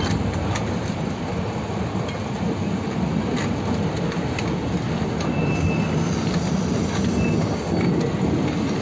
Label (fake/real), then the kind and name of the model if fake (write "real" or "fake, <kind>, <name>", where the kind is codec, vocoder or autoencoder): real